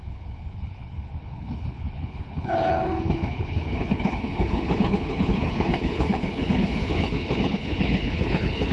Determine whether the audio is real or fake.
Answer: fake